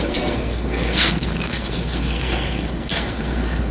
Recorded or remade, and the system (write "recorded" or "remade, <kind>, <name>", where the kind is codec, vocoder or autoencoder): remade, codec, SNAC